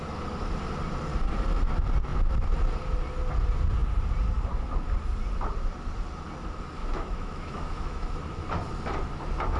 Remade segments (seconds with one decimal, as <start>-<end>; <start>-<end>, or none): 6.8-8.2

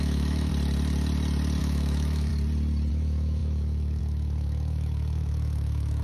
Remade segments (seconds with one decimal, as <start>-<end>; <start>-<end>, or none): 0.0-0.5; 1.6-2.3; 2.9-6.0

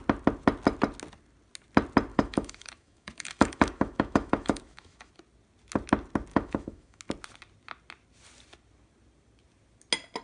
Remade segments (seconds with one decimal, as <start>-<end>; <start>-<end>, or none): 2.1-5.1; 6.3-7.0

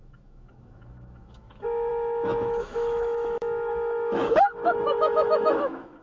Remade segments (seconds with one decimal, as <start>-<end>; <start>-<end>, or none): 0.0-6.0

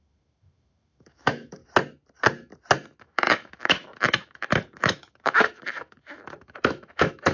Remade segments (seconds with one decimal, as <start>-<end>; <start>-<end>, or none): 0.0-1.6; 3.0-7.3